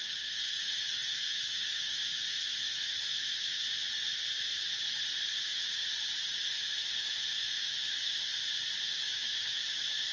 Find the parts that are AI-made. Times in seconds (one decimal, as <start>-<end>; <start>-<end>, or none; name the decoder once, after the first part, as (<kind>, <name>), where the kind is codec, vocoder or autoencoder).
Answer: 0.0-3.7 (autoencoder, DAC-VAE); 6.5-8.3; 8.8-10.1